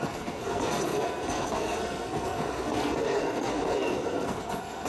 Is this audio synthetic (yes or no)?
yes